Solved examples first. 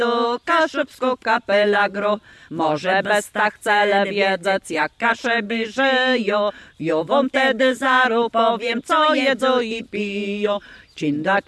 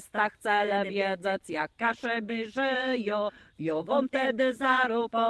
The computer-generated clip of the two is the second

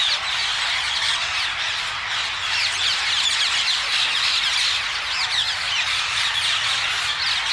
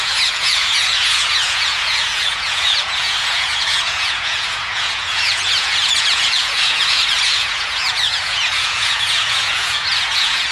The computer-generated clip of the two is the second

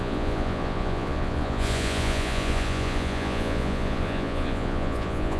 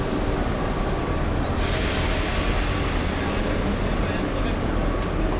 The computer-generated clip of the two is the first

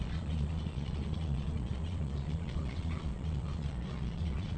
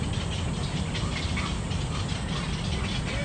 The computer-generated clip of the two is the first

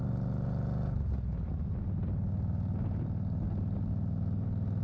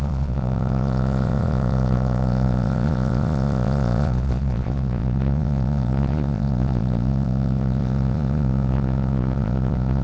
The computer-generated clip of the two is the second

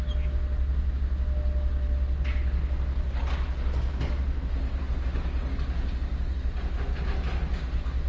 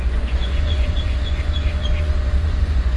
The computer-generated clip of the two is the second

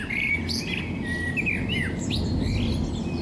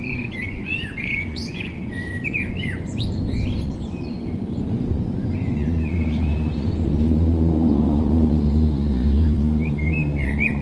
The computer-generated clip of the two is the second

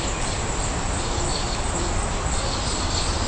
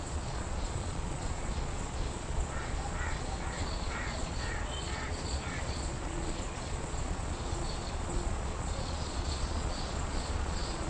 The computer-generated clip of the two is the second